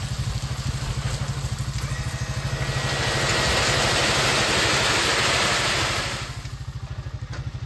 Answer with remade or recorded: recorded